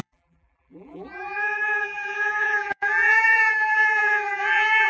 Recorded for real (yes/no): no